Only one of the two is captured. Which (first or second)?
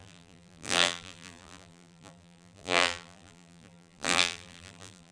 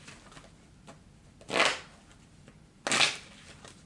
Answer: second